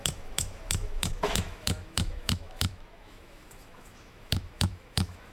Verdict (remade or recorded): remade